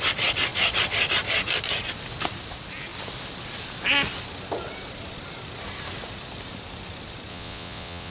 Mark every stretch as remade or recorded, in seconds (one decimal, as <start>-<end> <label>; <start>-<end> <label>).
0.0-7.3 recorded; 7.3-8.1 remade